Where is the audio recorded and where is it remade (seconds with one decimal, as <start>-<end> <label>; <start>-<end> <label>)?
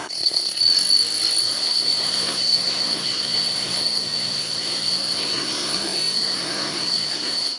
0.0-0.6 remade; 0.6-1.4 recorded; 1.4-7.6 remade